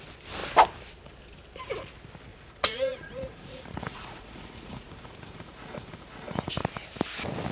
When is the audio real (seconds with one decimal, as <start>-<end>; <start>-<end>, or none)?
0.0-2.3; 6.5-7.5